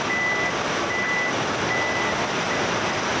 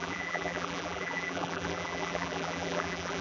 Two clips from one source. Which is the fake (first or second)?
second